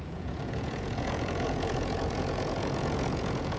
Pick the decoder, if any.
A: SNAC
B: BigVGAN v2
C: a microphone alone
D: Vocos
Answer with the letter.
D